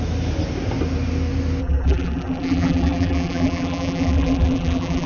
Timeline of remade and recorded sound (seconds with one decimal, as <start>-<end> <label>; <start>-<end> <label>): 0.0-1.6 recorded; 1.6-5.1 remade